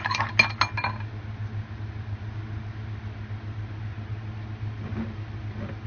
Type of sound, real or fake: real